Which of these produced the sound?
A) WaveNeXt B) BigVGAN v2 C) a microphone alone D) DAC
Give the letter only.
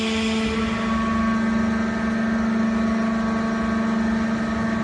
C